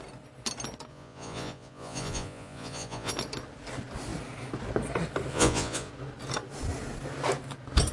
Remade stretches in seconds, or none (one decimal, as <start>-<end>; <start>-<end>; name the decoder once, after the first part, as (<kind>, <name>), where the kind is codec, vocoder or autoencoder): 0.9-3.1 (vocoder, Vocos); 5.3-5.9